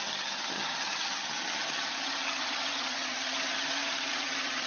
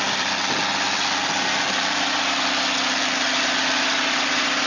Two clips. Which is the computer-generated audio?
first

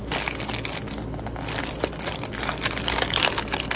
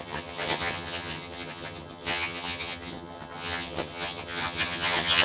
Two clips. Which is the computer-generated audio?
second